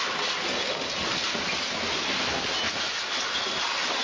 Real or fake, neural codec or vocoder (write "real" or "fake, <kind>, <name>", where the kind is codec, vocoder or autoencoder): real